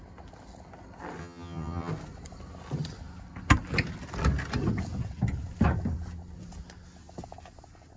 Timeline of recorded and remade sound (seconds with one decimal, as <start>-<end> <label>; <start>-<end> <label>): 0.0-1.2 recorded; 1.2-1.9 remade; 1.9-8.0 recorded

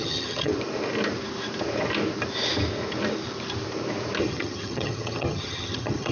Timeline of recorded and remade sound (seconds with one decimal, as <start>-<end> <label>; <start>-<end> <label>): 0.0-0.5 remade; 0.5-4.2 recorded; 4.2-6.1 remade

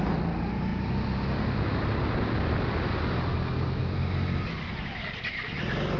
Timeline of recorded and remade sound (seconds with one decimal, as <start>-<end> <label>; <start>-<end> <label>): 0.0-6.0 recorded

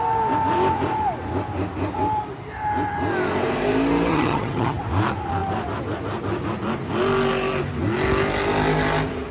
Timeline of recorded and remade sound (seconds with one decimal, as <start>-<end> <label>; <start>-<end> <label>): 0.0-4.1 recorded; 4.1-4.8 remade; 4.8-9.3 recorded

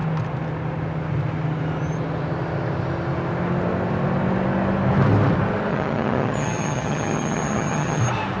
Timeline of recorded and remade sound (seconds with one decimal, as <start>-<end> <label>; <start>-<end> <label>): 0.0-5.7 recorded; 5.7-8.0 remade; 8.0-8.4 recorded